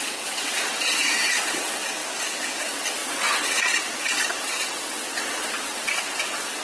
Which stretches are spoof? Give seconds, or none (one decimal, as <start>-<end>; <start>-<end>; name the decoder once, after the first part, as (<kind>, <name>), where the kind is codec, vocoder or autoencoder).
0.0-2.0 (vocoder, WaveNeXt); 2.6-6.6